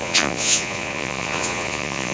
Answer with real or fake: fake